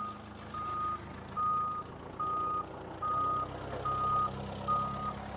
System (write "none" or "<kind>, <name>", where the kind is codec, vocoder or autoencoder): none